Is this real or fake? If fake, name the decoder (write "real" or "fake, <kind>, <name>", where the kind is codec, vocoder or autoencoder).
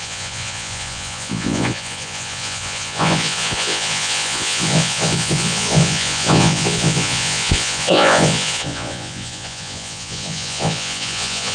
fake, vocoder, Vocos